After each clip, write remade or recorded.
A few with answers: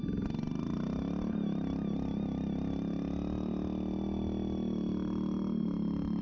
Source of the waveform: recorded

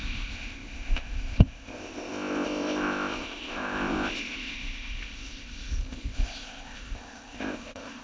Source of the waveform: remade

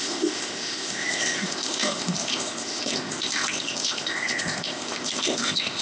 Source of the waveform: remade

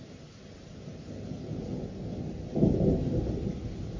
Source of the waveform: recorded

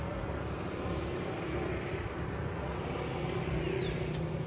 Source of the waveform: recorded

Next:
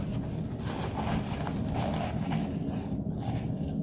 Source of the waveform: recorded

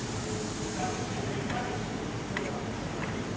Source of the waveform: recorded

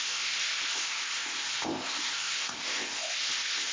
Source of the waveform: remade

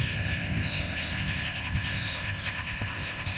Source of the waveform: remade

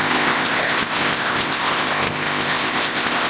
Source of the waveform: remade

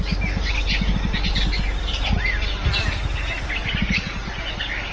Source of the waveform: recorded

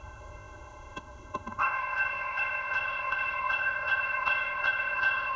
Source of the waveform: remade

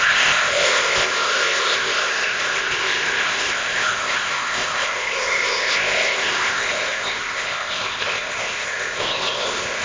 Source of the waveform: remade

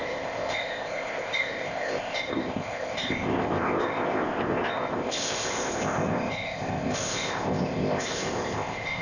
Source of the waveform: remade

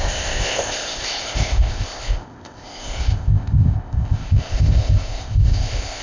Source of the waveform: remade